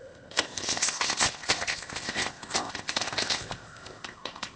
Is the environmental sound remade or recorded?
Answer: remade